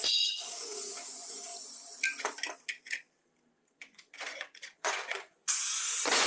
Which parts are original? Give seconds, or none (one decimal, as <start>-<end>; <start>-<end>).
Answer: 1.5-3.7